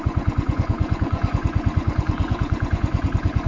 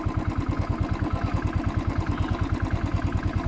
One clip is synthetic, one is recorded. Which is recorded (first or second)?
second